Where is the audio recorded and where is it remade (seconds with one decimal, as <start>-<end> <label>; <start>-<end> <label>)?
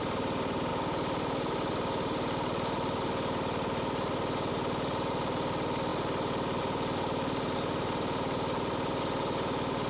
0.0-9.9 recorded